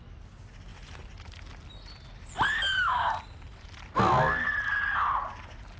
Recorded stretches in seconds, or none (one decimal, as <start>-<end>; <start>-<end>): 0.0-5.8